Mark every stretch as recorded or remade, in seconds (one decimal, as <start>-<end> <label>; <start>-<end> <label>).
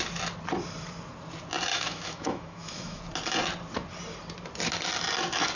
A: 0.0-1.7 recorded; 1.7-3.0 remade; 3.0-5.6 recorded